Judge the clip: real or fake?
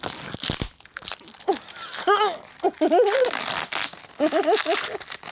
real